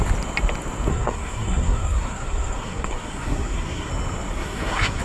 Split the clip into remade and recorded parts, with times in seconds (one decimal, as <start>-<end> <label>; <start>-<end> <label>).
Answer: 0.0-0.9 recorded; 0.9-3.9 remade; 3.9-4.3 recorded; 4.3-5.0 remade